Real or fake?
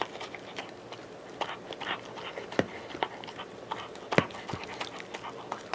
real